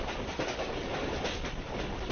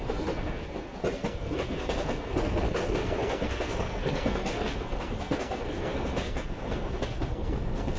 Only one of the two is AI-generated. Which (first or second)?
second